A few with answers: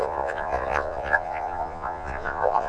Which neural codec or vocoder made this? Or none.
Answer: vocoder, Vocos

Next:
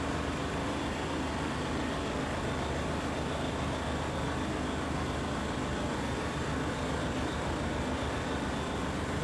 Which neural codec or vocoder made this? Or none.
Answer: none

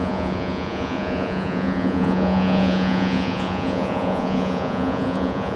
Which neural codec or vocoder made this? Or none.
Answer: vocoder, Vocos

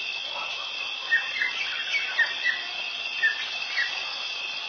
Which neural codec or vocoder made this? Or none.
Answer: none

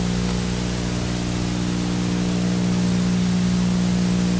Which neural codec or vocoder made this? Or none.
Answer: none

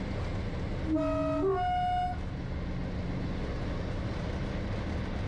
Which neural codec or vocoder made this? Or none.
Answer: none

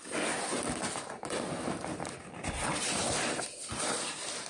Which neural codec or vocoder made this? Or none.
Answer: none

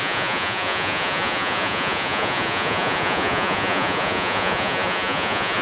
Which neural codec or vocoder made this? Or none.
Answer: vocoder, Vocos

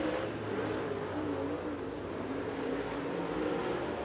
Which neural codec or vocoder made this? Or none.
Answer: none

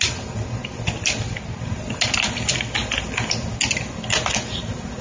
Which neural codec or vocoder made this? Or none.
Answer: none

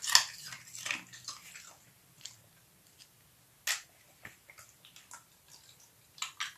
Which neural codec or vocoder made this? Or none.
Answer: none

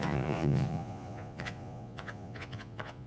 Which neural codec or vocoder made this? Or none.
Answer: vocoder, Vocos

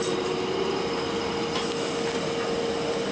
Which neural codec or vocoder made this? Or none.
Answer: none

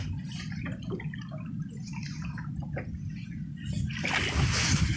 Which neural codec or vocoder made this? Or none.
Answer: none